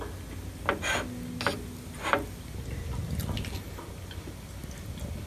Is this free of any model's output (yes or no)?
yes